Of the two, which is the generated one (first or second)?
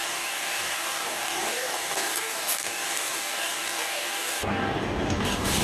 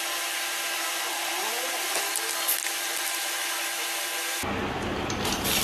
first